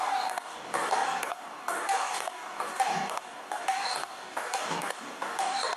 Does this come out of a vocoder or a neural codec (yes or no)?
yes